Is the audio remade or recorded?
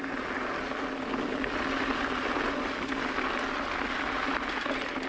recorded